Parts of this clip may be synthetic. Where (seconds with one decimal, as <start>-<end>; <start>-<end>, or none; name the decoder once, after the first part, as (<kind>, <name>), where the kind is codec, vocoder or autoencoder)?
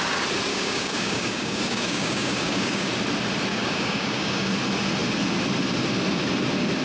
0.5-2.9 (codec, DAC); 3.5-4.5